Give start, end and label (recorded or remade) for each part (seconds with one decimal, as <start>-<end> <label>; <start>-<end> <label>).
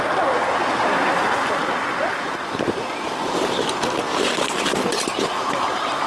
0.0-6.1 recorded